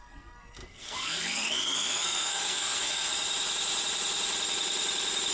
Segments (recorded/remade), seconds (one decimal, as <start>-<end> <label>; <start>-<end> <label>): 0.0-3.1 remade; 3.1-5.3 recorded